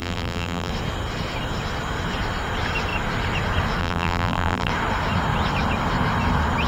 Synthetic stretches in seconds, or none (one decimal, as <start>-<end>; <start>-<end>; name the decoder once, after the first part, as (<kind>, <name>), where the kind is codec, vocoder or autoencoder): 0.0-0.7 (vocoder, BigVGAN v2); 3.8-4.7